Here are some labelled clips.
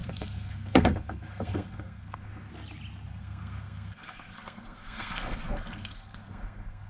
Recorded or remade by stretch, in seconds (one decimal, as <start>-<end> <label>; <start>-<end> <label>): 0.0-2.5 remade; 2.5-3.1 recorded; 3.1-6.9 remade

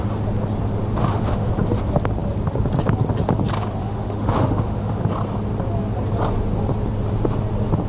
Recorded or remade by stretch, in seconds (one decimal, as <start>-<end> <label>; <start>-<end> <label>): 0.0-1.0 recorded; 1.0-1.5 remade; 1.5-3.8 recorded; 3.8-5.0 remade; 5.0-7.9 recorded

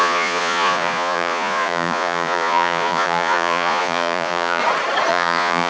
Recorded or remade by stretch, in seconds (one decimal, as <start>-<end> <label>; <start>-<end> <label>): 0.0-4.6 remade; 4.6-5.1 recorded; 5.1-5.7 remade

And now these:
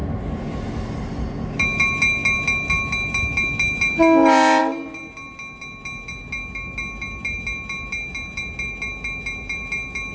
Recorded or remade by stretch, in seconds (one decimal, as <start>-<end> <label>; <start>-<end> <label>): 0.0-10.1 recorded